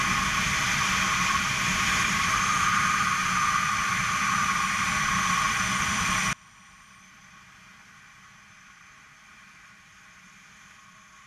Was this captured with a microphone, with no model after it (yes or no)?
yes